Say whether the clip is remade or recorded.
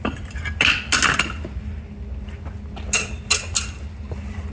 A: recorded